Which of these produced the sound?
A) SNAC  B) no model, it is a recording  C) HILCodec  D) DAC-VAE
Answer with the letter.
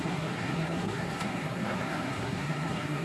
A